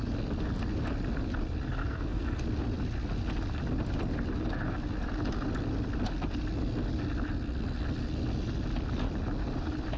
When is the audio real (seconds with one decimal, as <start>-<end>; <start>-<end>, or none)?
0.0-1.8; 2.4-10.0

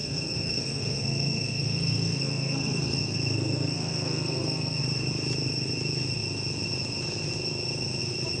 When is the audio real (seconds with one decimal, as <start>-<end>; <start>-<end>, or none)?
4.8-8.4

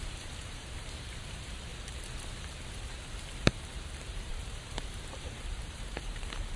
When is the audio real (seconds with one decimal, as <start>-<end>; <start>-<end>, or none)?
1.7-2.8

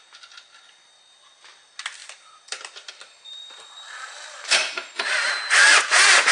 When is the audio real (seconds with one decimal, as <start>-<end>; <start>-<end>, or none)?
0.0-2.0; 5.3-6.3